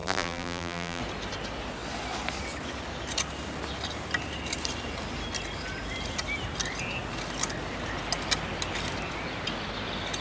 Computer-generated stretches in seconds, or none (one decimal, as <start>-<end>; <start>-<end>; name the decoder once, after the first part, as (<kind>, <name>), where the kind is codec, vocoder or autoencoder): 0.0-1.0 (vocoder, BigVGAN v2)